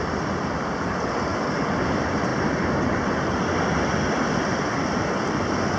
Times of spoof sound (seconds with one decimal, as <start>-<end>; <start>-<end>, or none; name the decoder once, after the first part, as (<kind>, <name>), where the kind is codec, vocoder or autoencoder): none